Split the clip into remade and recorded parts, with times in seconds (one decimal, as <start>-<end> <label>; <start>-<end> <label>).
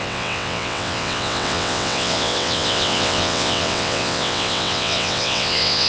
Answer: 0.0-5.9 remade